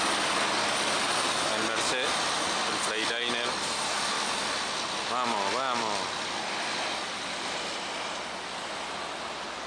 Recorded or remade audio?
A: recorded